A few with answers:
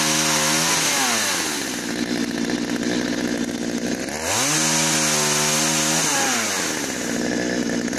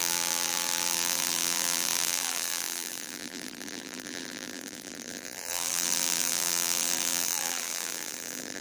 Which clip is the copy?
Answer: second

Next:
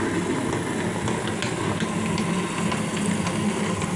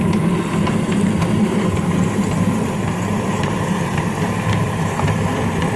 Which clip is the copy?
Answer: second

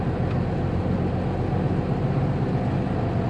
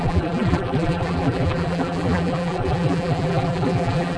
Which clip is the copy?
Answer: second